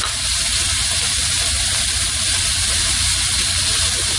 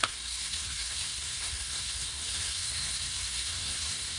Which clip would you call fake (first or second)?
second